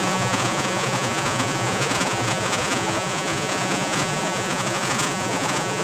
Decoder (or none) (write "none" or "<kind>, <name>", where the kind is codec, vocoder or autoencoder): vocoder, Vocos